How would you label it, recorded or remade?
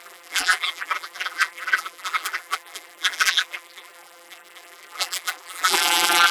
remade